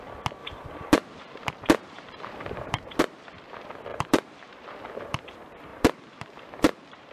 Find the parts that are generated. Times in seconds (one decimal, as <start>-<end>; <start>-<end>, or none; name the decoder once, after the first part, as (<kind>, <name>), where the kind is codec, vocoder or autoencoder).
0.4-3.0 (vocoder, BigVGAN v2); 3.9-5.2; 5.7-7.1